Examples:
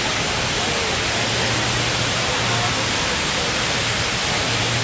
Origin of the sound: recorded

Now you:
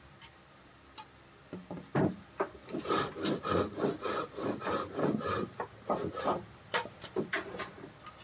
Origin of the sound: remade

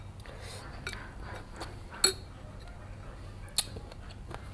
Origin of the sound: recorded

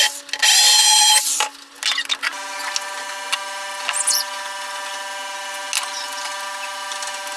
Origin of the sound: recorded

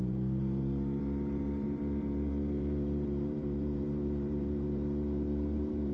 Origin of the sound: remade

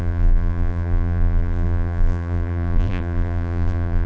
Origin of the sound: remade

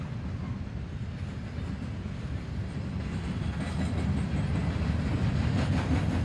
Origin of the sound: recorded